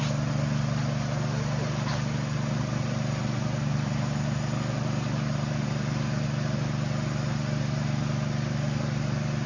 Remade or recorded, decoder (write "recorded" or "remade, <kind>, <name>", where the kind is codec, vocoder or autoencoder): recorded